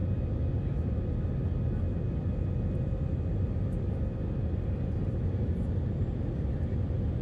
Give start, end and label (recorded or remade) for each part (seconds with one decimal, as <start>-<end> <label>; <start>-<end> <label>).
0.0-7.2 recorded